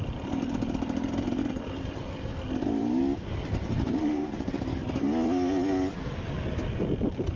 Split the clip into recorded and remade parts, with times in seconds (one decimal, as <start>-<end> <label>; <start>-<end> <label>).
0.0-3.0 remade; 3.0-4.0 recorded; 4.0-4.7 remade; 4.7-7.4 recorded